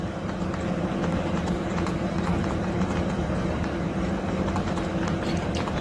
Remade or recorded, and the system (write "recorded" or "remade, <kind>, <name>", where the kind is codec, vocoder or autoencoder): remade, vocoder, BigVGAN v2